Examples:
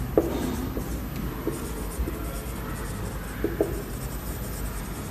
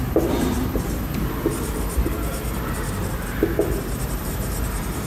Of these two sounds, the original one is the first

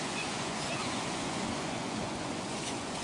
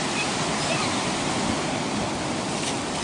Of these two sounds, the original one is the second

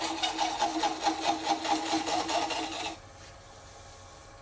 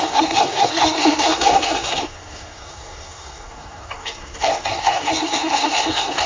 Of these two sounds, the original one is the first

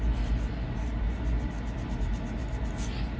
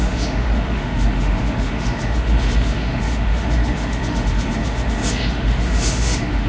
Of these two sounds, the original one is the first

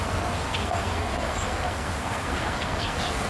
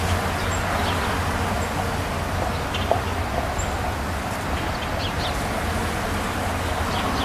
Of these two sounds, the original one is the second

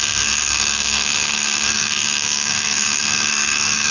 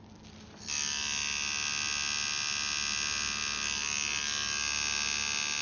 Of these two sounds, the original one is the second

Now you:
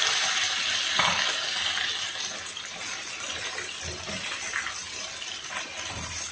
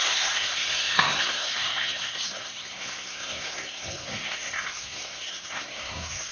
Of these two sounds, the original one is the first